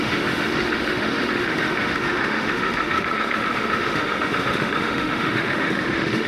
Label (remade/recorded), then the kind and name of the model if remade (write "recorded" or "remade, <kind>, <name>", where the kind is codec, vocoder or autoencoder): remade, autoencoder, DAC-VAE